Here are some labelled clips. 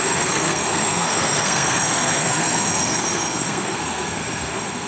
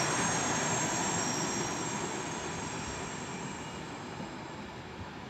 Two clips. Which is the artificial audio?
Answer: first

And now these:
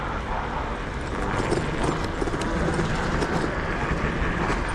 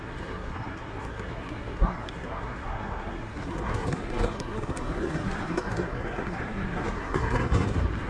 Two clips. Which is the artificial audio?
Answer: second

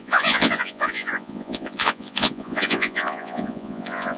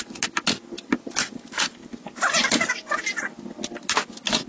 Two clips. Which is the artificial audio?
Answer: first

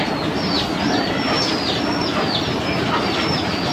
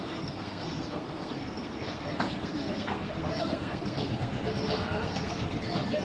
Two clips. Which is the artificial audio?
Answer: second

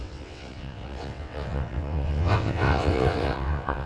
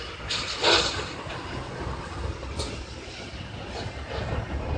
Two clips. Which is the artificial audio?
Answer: first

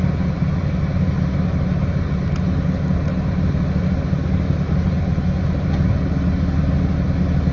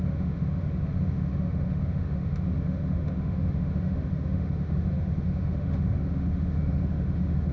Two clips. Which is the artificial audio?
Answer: second